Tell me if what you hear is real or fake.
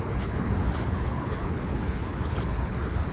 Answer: fake